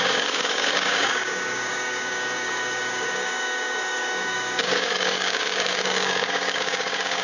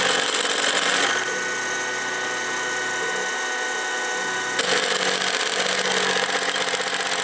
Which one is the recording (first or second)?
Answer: second